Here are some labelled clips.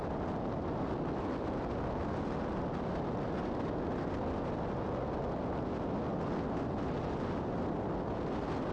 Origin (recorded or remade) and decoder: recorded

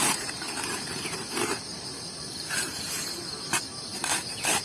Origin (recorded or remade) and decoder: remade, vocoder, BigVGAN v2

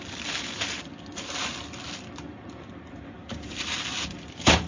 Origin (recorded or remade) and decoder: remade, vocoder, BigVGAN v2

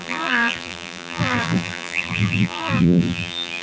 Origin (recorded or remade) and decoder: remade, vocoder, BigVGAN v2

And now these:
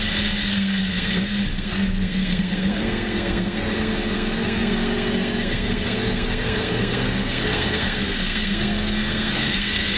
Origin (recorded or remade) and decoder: remade, codec, SNAC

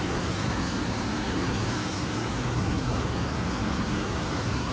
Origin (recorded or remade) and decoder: remade, codec, SNAC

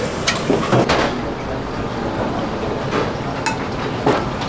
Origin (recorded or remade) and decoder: recorded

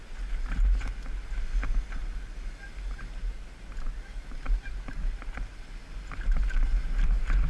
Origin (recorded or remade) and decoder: recorded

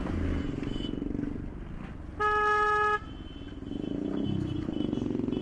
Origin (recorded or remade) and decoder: recorded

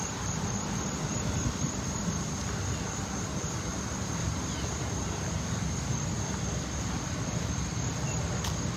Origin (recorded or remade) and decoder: recorded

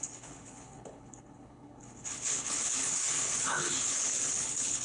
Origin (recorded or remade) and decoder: remade, codec, HILCodec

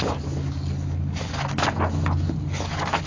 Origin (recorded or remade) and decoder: recorded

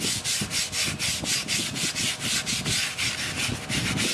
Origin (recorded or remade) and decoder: recorded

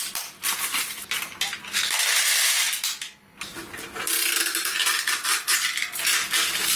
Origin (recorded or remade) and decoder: recorded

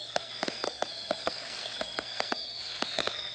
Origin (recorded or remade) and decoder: remade, codec, SNAC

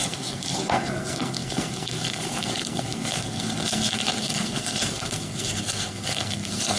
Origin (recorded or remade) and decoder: remade, codec, SNAC